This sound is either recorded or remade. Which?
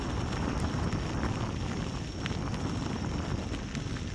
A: recorded